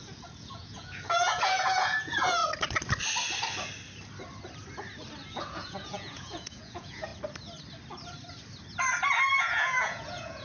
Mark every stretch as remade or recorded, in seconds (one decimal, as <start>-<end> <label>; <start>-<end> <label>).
0.0-2.4 remade; 2.4-5.3 recorded; 5.3-7.1 remade; 7.1-9.4 recorded; 9.4-10.4 remade